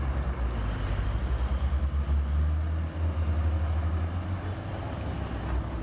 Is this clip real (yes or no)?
yes